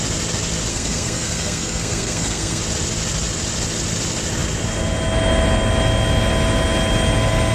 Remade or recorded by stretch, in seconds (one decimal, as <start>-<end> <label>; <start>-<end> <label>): 0.0-0.7 recorded; 0.7-2.6 remade; 2.6-7.5 recorded